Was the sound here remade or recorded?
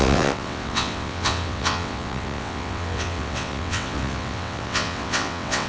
remade